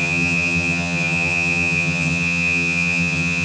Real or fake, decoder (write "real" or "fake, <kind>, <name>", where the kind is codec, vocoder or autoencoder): fake, vocoder, HiFi-GAN